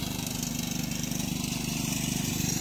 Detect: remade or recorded remade